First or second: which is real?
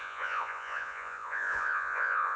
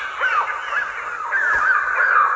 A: second